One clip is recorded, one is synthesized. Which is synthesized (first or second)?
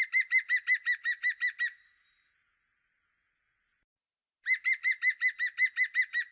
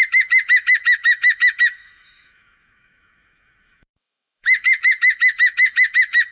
second